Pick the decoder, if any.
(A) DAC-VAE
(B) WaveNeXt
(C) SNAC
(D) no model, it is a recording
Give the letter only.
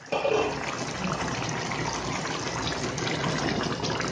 D